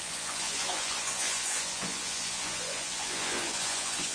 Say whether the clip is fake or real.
fake